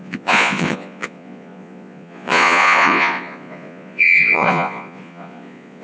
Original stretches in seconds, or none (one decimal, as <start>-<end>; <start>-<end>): none

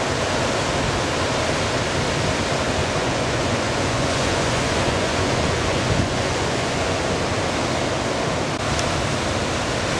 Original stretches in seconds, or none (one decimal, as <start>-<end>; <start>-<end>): 0.0-2.8; 7.0-10.0